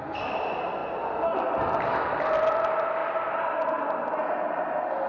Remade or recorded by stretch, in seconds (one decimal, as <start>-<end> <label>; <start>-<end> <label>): 0.0-5.1 recorded